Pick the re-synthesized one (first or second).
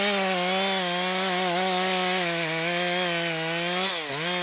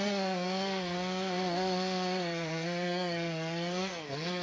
second